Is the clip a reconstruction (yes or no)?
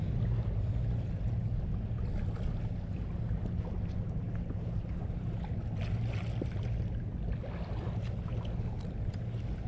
no